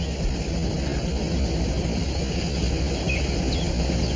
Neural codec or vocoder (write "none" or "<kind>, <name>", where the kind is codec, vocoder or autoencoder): none